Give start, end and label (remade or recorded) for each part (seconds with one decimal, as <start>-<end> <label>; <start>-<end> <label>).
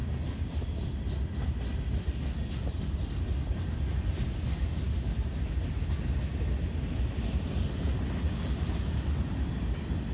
0.0-10.1 recorded